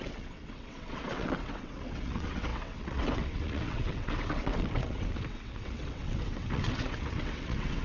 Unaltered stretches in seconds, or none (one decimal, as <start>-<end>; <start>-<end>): none